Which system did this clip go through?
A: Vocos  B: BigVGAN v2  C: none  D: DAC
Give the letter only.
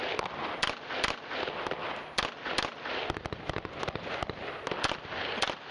C